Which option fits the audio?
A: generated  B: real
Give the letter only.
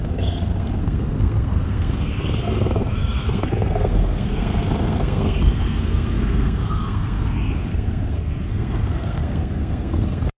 A